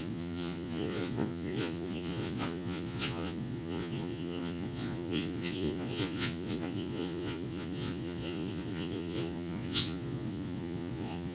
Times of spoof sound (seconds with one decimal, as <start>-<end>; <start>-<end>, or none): 0.0-11.3